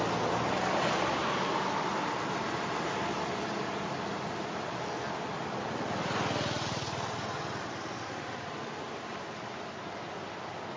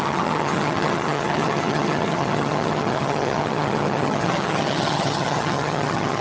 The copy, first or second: second